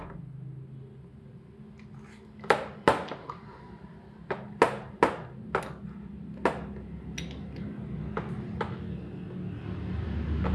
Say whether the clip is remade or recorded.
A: recorded